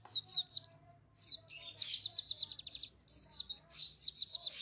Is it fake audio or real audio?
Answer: real